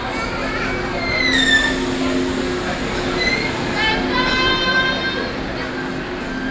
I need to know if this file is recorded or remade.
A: recorded